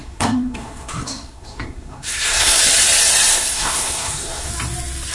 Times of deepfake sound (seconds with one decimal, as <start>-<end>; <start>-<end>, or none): 0.0-2.6; 3.3-4.5

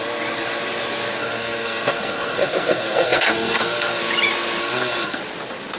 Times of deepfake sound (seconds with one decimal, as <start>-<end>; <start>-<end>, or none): 1.2-4.0; 4.6-5.2